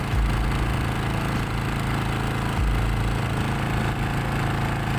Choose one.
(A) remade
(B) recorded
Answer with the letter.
B